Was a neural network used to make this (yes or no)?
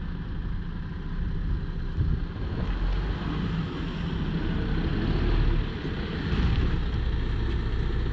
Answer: no